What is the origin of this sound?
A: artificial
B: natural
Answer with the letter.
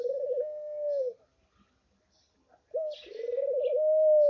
B